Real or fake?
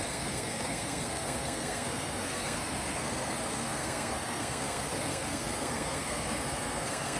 fake